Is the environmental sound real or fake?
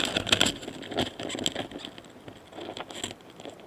real